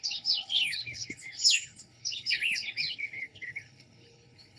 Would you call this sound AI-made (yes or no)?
yes